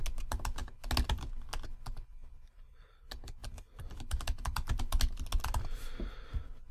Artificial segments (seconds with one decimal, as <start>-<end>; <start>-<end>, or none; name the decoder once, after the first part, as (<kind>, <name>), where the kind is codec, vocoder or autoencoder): 2.2-3.0 (vocoder, BigVGAN v2); 3.4-5.0